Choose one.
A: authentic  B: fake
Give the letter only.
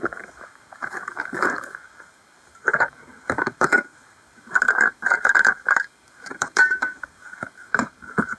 B